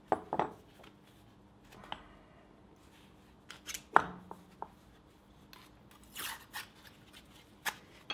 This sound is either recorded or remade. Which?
recorded